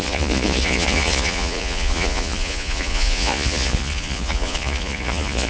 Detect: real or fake fake